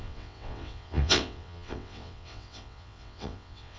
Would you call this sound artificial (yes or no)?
yes